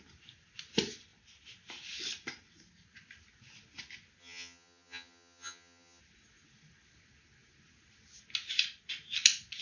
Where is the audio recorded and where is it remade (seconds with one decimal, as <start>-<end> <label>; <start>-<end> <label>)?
0.0-4.2 recorded; 4.2-6.0 remade; 6.0-9.6 recorded